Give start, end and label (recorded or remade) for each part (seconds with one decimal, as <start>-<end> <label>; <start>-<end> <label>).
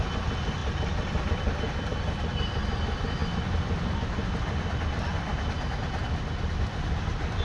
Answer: 0.0-7.4 recorded